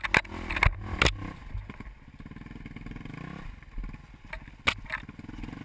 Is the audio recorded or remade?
recorded